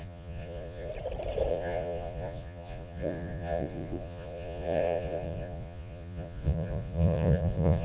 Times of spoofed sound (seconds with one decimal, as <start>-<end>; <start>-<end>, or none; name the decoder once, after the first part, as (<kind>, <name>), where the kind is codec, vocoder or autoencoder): 0.0-0.9 (vocoder, Vocos); 1.5-7.8